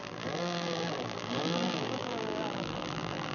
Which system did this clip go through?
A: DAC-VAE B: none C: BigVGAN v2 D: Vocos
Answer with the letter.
C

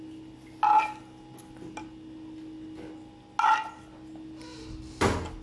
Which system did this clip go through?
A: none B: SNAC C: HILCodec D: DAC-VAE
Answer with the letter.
A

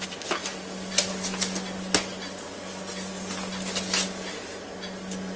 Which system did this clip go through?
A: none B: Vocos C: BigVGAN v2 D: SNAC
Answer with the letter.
A